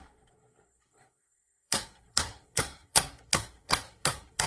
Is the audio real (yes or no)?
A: no